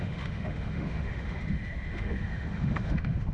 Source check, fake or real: fake